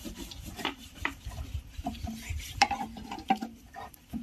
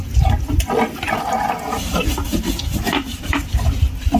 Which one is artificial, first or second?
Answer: first